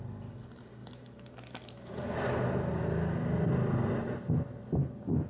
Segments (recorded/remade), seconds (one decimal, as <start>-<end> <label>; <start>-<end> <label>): 0.0-0.8 recorded; 0.8-2.1 remade; 2.1-5.3 recorded